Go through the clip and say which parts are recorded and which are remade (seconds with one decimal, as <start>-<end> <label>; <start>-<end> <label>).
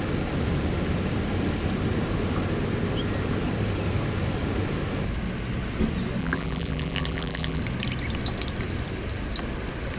0.0-6.2 recorded; 6.2-7.6 remade; 7.6-10.0 recorded